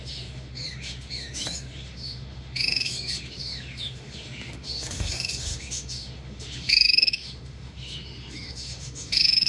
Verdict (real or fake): fake